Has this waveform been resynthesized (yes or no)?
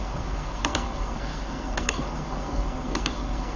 yes